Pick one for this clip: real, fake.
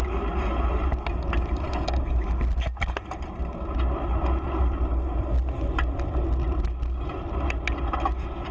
real